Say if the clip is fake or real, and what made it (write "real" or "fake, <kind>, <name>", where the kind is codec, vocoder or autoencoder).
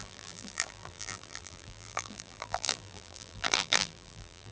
fake, vocoder, BigVGAN v2